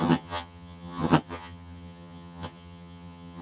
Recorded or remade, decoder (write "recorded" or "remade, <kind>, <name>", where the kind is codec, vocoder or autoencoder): remade, vocoder, HiFi-GAN